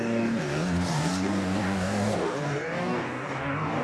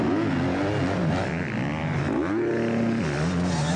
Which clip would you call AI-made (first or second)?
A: first